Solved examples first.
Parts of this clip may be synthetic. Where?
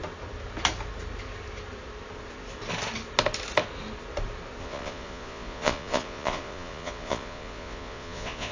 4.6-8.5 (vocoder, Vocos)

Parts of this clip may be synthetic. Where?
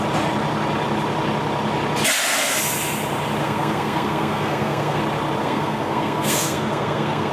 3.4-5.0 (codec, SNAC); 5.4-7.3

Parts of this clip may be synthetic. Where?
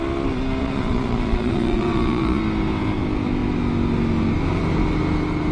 0.6-2.4 (vocoder, Vocos)